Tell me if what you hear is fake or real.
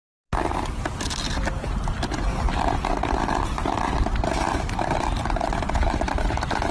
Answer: real